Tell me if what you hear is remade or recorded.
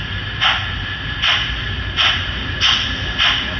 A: recorded